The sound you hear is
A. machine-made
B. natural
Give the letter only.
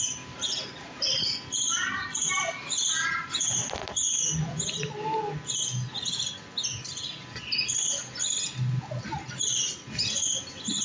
B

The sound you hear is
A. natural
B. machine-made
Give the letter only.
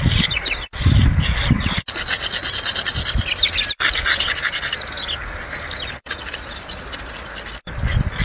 A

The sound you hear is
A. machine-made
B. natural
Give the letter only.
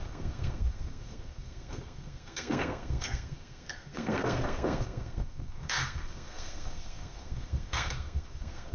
A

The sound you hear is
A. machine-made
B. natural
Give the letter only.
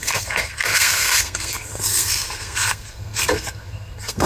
A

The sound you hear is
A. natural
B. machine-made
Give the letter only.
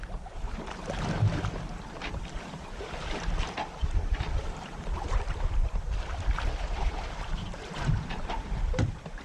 B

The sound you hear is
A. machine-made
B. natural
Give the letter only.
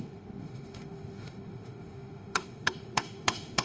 A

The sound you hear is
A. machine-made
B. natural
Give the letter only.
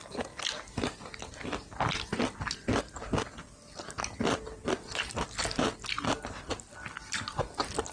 B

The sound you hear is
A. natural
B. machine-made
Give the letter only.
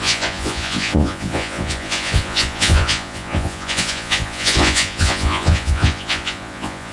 B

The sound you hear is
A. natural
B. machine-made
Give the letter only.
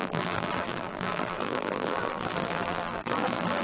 B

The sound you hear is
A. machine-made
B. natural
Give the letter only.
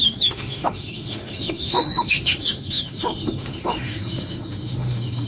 A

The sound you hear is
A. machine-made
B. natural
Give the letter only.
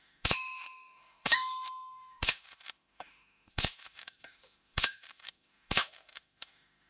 A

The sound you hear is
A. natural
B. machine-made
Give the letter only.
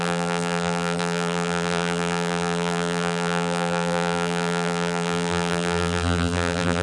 B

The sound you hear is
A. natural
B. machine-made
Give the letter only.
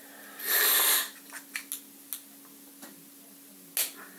A